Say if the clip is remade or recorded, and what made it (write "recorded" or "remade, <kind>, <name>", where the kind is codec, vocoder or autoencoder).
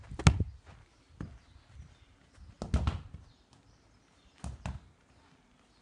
recorded